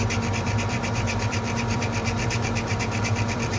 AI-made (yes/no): yes